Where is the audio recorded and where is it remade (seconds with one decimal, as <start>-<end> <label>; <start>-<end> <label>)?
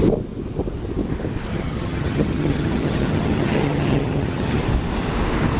0.0-1.5 recorded; 1.5-4.6 remade; 4.6-5.6 recorded